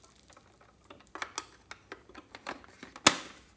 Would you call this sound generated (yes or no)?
no